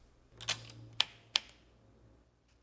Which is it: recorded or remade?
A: recorded